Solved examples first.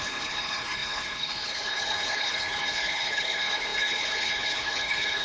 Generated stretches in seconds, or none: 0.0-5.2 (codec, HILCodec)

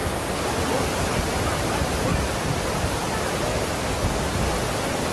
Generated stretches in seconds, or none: none

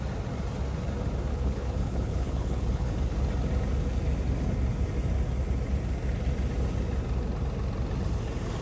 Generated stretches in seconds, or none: 1.3-2.9 (codec, HILCodec)

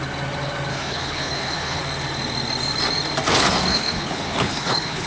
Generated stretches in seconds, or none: 0.7-1.8 (codec, HILCodec); 3.7-5.1

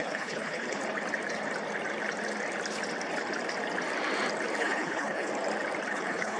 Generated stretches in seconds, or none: 0.0-0.8 (codec, HILCodec); 4.6-5.3; 5.9-6.4

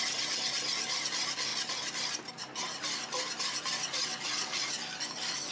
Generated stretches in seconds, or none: none

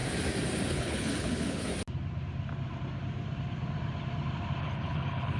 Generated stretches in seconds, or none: 0.7-1.7 (codec, HILCodec); 4.6-5.4